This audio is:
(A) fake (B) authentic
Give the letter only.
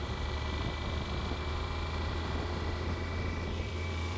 A